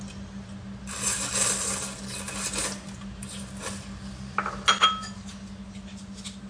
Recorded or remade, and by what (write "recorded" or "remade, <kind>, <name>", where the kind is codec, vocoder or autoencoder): recorded